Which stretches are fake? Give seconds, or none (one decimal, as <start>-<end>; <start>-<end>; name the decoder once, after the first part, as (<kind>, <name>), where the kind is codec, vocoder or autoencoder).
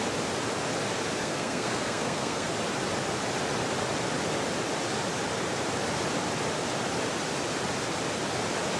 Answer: 1.2-2.5 (codec, SNAC)